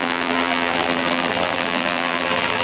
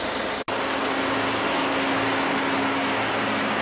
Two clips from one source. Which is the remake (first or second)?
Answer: first